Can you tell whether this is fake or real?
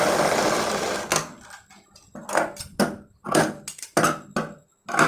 real